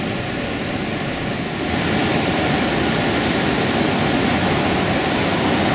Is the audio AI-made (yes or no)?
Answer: no